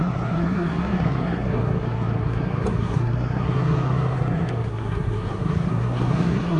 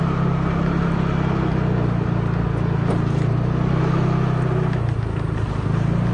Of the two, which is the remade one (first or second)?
first